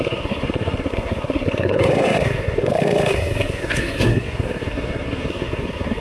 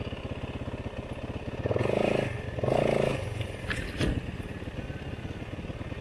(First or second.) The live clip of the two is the second